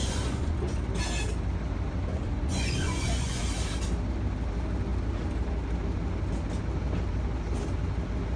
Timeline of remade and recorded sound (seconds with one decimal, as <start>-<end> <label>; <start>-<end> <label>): 0.0-0.8 remade; 0.8-2.1 recorded; 2.1-3.4 remade; 3.4-8.4 recorded